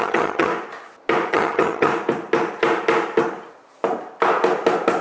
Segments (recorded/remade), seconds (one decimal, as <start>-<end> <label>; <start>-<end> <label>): 0.0-0.5 remade; 0.5-1.3 recorded; 1.3-1.9 remade; 1.9-5.0 recorded